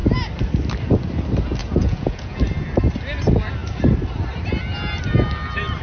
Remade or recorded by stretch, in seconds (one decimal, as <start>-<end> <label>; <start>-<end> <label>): 0.0-1.6 recorded; 1.6-2.4 remade; 2.4-5.8 recorded